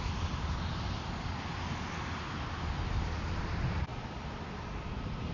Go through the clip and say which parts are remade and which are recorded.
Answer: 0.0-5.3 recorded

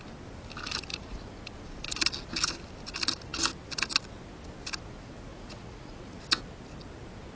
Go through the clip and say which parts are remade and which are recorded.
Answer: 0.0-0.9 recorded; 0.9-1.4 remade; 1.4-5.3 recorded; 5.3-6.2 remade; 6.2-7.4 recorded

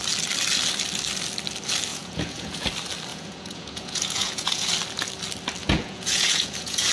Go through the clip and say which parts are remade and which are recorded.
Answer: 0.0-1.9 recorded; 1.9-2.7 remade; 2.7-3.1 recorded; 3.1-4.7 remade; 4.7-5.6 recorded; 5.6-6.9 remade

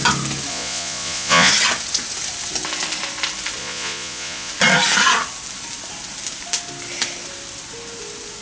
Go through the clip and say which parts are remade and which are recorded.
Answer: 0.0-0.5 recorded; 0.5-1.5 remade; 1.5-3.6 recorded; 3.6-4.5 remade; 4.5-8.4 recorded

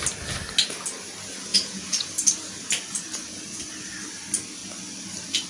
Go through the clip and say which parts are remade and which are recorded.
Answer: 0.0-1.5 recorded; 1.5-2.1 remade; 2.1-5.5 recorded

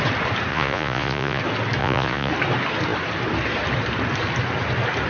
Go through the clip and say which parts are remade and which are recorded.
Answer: 0.0-0.5 recorded; 0.5-1.4 remade; 1.4-1.8 recorded; 1.8-2.3 remade; 2.3-5.1 recorded

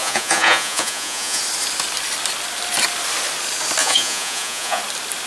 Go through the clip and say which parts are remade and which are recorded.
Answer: 0.0-1.4 remade; 1.4-3.8 recorded; 3.8-4.8 remade; 4.8-5.3 recorded